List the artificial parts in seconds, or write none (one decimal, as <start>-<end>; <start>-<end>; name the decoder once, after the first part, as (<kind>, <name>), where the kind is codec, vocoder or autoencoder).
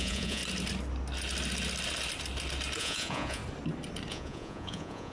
0.0-0.4 (vocoder, Vocos); 2.8-3.4; 4.1-5.1